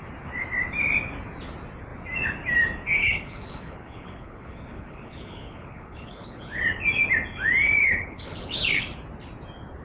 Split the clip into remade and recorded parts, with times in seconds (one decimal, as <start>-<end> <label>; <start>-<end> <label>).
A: 0.0-3.0 recorded; 3.0-6.6 remade; 6.6-7.8 recorded; 7.8-8.8 remade; 8.8-9.8 recorded